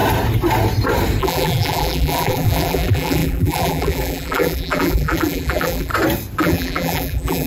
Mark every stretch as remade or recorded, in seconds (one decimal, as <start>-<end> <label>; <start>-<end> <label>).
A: 0.0-1.2 recorded; 1.2-5.9 remade; 5.9-6.4 recorded; 6.4-7.5 remade